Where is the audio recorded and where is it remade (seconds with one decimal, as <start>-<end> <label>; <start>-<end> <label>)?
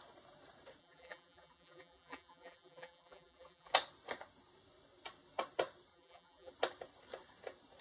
0.0-0.8 recorded; 0.8-3.7 remade; 3.7-5.9 recorded; 5.9-6.5 remade; 6.5-7.8 recorded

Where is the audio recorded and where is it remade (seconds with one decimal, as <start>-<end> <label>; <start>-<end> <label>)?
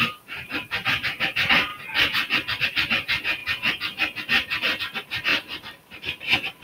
0.0-1.7 remade; 1.7-2.6 recorded; 2.6-3.4 remade; 3.4-4.8 recorded; 4.8-6.6 remade